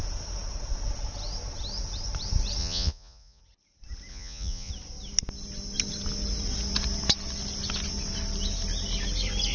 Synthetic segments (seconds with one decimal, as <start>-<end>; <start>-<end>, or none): 2.6-3.4; 4.1-4.7